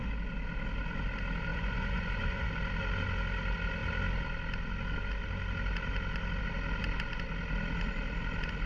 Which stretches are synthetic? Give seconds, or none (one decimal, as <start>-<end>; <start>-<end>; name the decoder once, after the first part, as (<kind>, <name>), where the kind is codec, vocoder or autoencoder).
1.5-2.5 (vocoder, Vocos)